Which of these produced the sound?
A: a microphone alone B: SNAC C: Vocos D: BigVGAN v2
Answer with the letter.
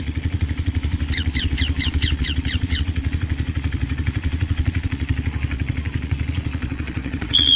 C